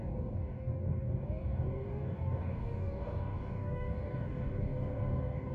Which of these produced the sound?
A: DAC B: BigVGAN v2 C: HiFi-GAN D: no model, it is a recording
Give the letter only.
A